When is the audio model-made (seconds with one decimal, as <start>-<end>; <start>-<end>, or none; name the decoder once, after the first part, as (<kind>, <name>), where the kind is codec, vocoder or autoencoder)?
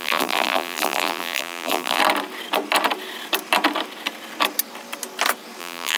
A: 0.0-2.0 (vocoder, BigVGAN v2); 5.6-6.0